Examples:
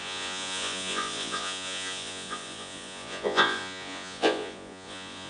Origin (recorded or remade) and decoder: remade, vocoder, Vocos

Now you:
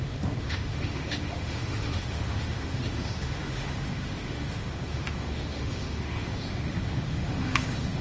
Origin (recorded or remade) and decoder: remade, autoencoder, DAC-VAE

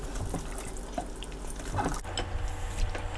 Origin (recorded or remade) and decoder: recorded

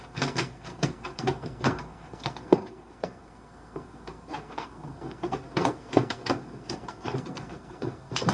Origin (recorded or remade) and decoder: remade, codec, SNAC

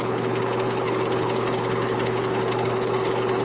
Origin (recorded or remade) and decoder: remade, codec, HILCodec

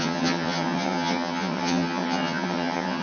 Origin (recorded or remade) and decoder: remade, vocoder, HiFi-GAN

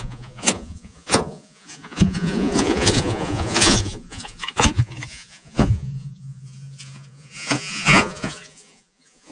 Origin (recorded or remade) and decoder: remade, vocoder, Vocos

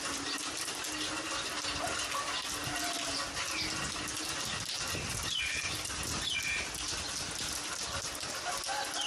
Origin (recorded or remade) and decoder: recorded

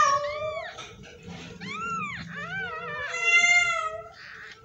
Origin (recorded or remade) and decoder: remade, vocoder, BigVGAN v2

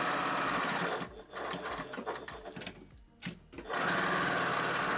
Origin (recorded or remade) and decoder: recorded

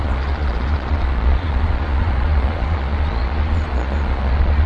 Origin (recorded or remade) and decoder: remade, vocoder, Vocos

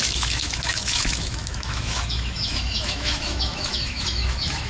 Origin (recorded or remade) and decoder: remade, autoencoder, DAC-VAE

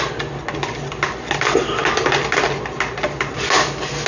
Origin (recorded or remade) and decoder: recorded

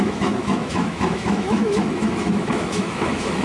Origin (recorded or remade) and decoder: remade, autoencoder, DAC-VAE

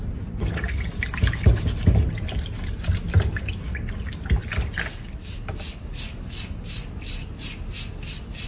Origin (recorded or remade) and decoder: recorded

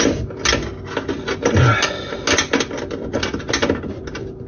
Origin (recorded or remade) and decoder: recorded